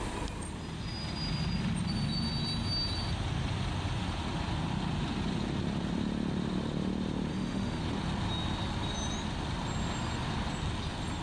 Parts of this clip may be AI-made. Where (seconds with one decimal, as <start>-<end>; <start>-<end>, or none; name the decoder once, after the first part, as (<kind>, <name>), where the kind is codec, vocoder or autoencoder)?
7.3-7.8 (autoencoder, DAC-VAE)

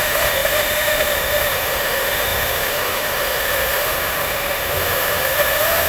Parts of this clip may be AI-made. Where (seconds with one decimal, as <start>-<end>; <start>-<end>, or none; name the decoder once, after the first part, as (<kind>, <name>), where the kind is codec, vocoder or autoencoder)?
0.0-5.9 (autoencoder, DAC-VAE)

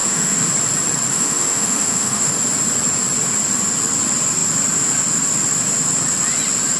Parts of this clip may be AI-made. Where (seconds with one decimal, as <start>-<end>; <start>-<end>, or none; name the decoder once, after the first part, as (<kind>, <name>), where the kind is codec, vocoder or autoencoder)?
0.0-0.5 (autoencoder, DAC-VAE); 1.1-2.3

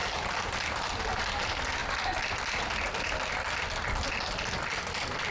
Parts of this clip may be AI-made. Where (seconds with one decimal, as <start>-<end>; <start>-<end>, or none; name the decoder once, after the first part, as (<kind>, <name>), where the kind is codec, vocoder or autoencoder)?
none

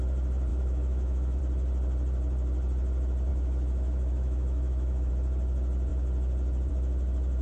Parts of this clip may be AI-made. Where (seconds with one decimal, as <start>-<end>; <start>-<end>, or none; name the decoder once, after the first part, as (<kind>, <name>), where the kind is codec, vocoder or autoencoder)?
0.5-1.4 (autoencoder, DAC-VAE); 3.3-5.1

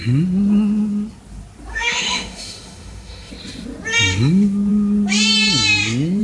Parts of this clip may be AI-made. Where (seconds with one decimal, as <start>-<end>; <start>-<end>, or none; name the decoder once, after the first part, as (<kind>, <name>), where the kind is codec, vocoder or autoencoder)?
1.7-3.3 (autoencoder, DAC-VAE)